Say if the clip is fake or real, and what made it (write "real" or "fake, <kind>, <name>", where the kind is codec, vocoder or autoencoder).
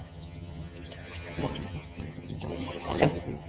fake, vocoder, HiFi-GAN